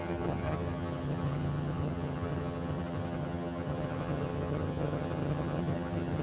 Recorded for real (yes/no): no